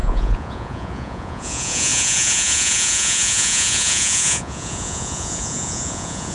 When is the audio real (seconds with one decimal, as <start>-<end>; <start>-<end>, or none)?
none